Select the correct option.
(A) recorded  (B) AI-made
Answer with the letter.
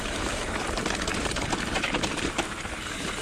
B